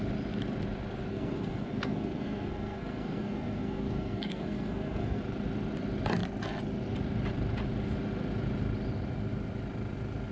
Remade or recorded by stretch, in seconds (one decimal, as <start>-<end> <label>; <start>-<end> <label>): 0.0-1.1 recorded; 1.1-5.2 remade; 5.2-10.3 recorded